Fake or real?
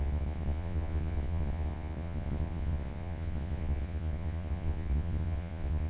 fake